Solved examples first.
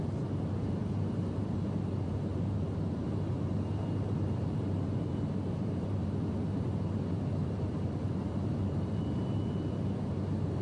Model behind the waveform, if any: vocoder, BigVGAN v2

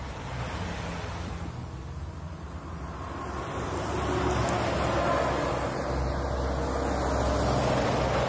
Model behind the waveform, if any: none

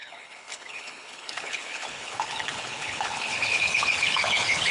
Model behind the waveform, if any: codec, HILCodec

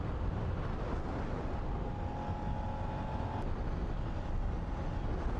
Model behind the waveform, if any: none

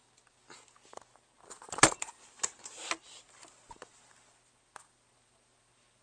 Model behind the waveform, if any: none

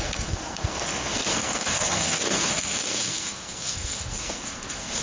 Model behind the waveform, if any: codec, SNAC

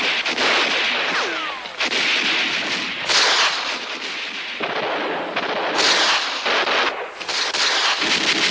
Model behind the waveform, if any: none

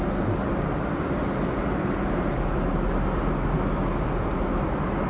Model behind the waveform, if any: none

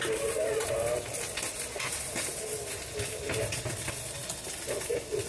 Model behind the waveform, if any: none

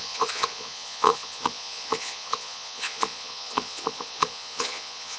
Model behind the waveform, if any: vocoder, Vocos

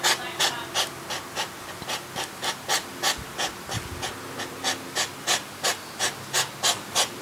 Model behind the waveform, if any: none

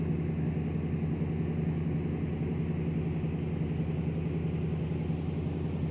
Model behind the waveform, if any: none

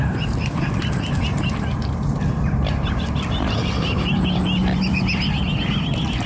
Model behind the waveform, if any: vocoder, BigVGAN v2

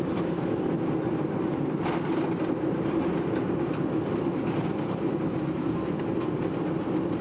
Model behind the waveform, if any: none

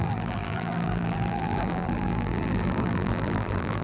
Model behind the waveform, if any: vocoder, BigVGAN v2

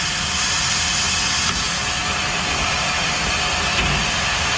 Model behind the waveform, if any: none